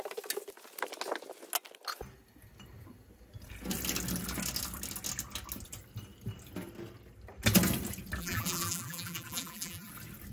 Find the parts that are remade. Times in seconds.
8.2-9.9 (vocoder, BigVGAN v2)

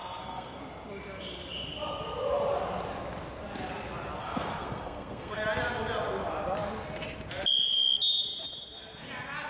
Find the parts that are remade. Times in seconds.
0.0-0.6 (codec, SNAC); 4.2-5.4

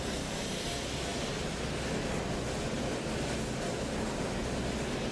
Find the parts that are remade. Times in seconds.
none

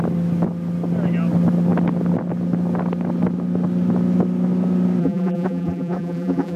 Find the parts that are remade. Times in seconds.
5.0-6.6 (vocoder, BigVGAN v2)